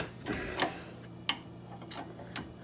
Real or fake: real